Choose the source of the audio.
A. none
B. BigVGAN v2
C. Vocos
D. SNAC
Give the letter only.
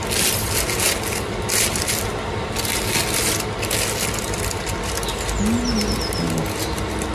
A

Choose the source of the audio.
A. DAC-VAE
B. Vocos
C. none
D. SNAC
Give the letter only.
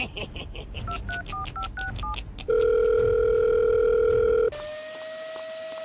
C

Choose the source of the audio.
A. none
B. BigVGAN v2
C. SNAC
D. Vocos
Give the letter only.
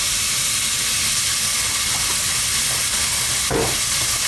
A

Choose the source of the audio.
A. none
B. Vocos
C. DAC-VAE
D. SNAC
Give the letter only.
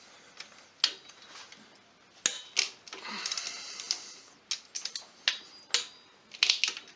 A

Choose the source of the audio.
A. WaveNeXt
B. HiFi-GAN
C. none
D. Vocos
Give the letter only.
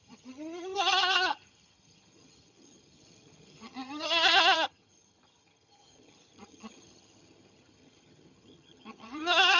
B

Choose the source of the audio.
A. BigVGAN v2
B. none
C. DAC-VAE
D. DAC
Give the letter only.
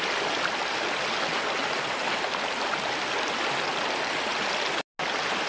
B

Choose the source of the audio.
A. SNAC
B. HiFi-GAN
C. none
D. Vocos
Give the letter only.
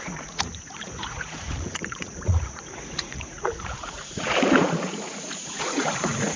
D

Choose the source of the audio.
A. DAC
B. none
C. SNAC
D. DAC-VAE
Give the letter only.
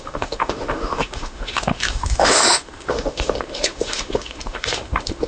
D